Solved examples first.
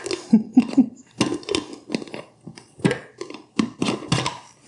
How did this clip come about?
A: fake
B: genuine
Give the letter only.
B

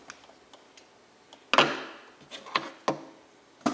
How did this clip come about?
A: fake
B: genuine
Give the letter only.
B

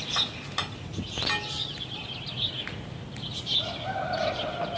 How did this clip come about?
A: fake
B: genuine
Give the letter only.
B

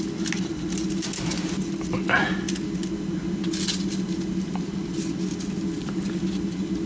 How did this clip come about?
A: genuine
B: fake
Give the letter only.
A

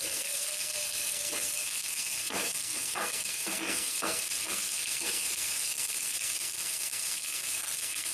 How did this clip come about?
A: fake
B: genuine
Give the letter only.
A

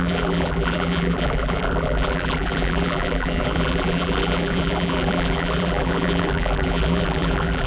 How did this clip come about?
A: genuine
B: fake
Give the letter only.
B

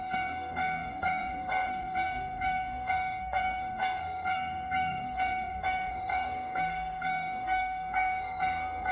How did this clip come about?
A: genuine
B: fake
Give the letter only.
B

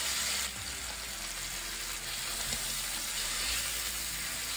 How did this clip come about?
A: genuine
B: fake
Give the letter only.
A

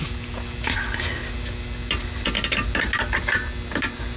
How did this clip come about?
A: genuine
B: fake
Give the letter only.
A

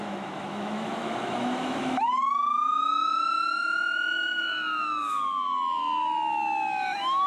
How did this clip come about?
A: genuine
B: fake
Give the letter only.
B